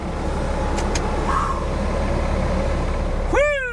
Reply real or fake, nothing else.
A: real